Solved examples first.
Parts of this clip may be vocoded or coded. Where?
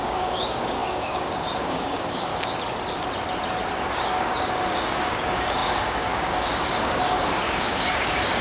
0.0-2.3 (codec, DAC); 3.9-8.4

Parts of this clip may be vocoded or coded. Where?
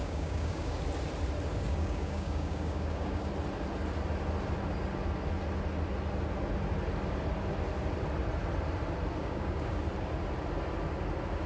0.0-0.8 (codec, DAC); 1.5-3.3; 9.2-9.8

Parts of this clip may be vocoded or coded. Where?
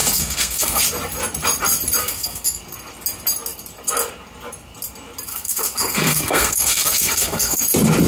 0.0-0.8 (codec, SNAC); 2.0-2.6; 5.3-7.6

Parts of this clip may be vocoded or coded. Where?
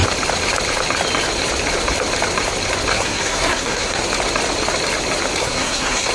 2.9-4.0 (codec, SNAC); 5.4-6.1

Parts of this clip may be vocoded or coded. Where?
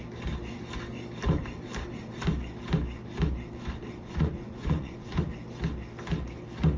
4.0-5.2 (vocoder, Vocos)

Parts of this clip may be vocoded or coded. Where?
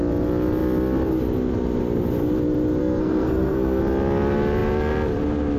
2.8-3.8 (codec, SNAC)